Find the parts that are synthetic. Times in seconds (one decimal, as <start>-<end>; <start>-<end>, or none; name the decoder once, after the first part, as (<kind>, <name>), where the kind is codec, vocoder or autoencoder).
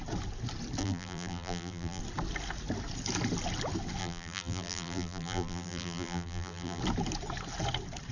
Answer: 0.8-2.0 (vocoder, BigVGAN v2); 4.0-6.8